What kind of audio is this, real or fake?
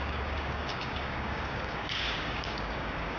fake